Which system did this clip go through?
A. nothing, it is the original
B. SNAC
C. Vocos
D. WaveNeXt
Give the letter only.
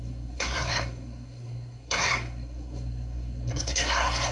B